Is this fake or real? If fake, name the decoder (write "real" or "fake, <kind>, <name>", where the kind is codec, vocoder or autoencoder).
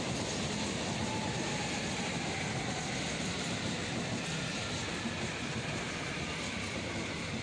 real